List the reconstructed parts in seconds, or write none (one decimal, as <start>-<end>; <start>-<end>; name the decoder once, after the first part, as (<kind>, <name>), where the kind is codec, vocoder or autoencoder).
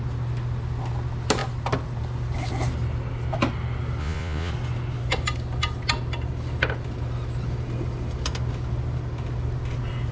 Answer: 4.0-4.5 (vocoder, Vocos)